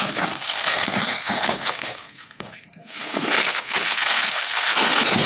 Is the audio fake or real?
fake